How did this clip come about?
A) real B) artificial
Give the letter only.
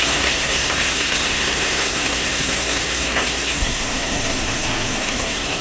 B